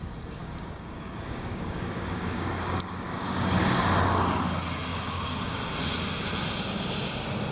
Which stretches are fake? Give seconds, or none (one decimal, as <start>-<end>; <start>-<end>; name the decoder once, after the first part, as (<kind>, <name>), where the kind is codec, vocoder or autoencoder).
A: 0.4-3.6 (codec, DAC); 4.9-5.6